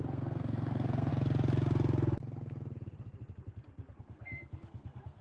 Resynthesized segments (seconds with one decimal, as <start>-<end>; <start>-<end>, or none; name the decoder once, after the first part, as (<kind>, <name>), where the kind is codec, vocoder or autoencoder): 0.0-1.1 (codec, SNAC); 4.0-5.2